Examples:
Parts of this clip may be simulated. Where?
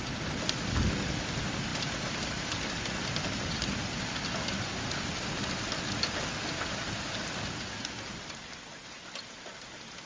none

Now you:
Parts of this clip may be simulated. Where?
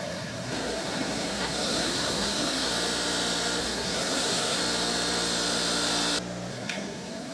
0.0-2.7 (codec, SNAC); 3.6-4.6; 6.5-7.3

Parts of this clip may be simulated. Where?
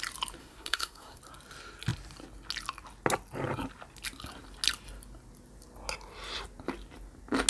0.4-1.2 (codec, SNAC)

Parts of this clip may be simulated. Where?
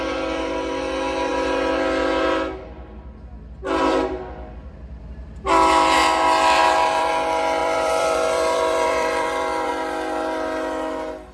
6.6-7.1 (vocoder, BigVGAN v2); 7.6-9.7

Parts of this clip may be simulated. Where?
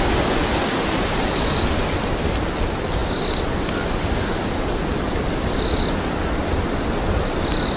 none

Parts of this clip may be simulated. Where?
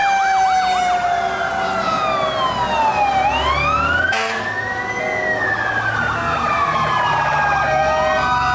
none